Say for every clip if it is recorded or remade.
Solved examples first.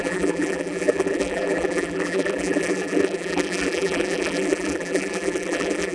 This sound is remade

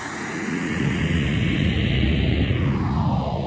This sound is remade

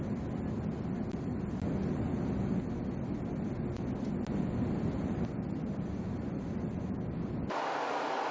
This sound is recorded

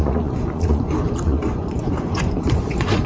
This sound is remade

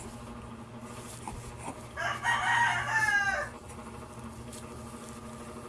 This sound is recorded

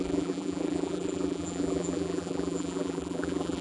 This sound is remade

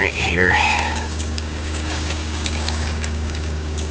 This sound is remade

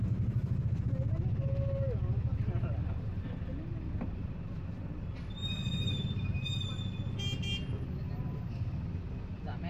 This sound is recorded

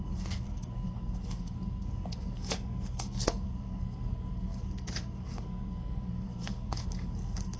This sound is remade